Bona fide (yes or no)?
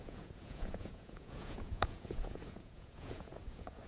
no